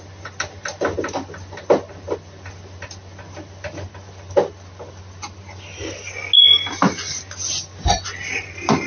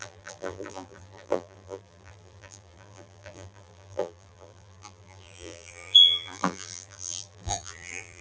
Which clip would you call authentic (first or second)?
first